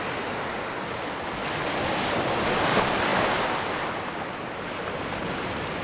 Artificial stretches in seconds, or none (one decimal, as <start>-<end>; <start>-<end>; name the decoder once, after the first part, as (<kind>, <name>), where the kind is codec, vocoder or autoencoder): none